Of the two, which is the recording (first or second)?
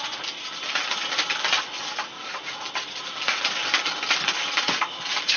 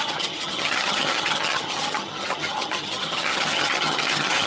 first